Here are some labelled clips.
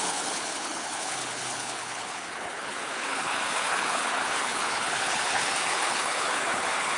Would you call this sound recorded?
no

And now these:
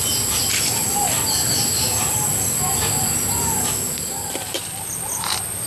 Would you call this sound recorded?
yes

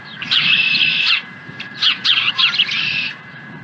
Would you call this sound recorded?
no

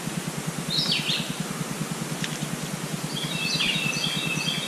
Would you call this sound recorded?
yes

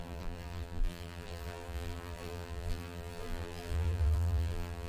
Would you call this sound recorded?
no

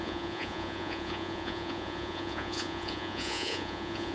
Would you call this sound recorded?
no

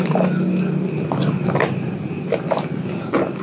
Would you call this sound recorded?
yes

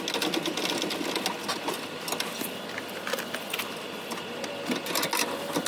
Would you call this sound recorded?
yes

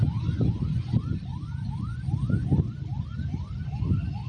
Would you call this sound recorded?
yes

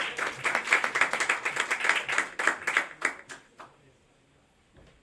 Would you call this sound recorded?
yes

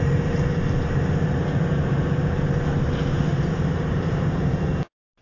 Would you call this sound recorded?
no